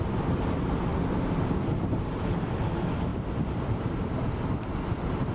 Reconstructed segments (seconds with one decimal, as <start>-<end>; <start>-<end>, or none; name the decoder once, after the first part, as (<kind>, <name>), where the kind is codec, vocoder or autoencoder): 3.1-4.3 (vocoder, BigVGAN v2)